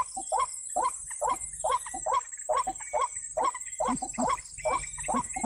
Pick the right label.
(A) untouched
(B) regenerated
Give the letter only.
A